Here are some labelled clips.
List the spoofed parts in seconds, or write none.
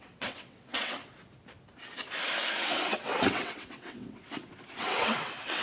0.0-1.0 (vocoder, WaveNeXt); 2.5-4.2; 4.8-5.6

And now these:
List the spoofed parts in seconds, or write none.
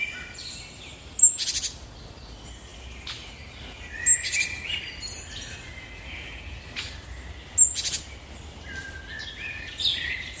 none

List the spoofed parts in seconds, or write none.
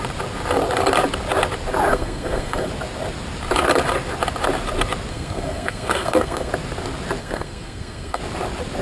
1.9-2.7 (codec, SNAC); 5.1-6.5; 7.2-8.2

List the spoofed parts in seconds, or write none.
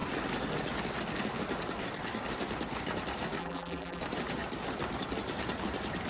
3.4-4.0 (vocoder, BigVGAN v2)